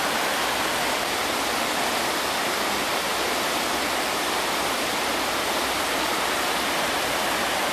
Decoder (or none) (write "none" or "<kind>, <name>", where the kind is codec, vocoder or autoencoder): vocoder, BigVGAN v2